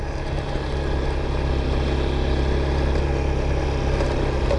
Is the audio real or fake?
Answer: real